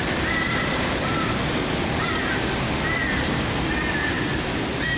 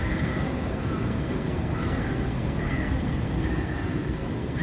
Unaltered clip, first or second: first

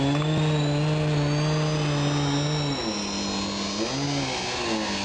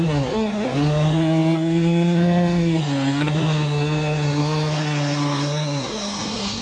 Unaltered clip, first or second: first